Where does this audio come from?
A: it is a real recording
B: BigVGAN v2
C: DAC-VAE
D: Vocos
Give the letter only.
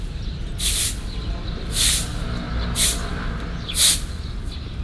A